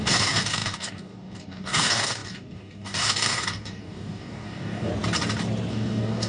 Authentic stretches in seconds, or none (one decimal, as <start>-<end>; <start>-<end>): 4.9-5.7

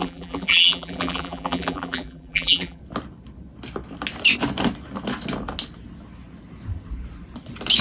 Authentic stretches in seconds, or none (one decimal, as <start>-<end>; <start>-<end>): 2.8-7.8

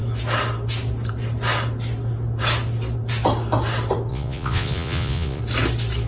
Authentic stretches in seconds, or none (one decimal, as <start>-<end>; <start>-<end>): 0.0-4.1; 5.4-6.1